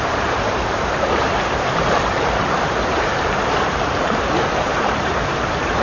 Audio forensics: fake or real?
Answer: fake